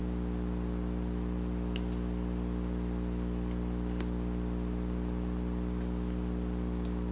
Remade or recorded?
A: recorded